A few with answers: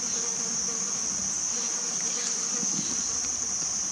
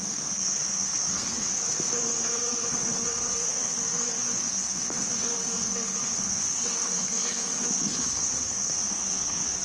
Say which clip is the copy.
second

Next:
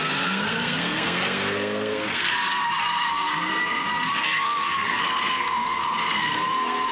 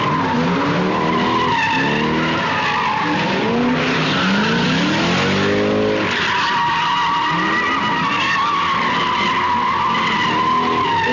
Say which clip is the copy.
first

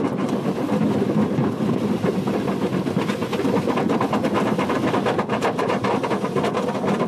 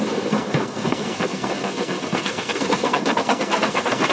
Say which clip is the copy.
second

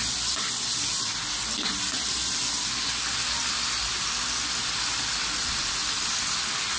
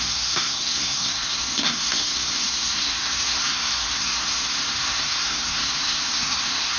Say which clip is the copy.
second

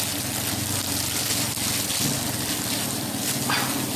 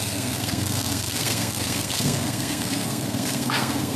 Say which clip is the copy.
second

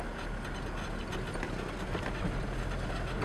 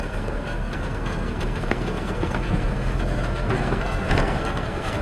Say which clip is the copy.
second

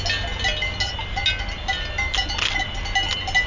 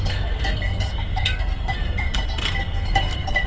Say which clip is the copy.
second